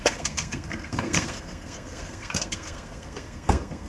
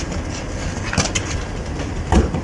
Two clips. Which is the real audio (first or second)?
second